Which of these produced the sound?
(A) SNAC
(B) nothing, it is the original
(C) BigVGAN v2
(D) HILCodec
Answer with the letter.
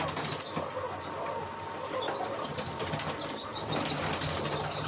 B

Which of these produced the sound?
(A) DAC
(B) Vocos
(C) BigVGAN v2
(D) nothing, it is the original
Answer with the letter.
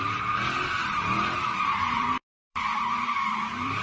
C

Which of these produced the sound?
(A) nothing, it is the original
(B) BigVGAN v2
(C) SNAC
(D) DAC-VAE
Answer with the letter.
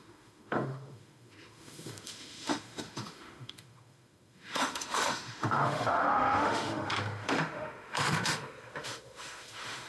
D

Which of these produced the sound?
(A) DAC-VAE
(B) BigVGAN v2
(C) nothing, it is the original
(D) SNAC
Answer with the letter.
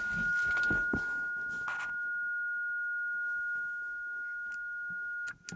C